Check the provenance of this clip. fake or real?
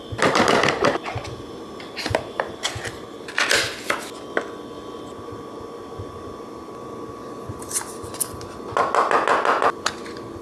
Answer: real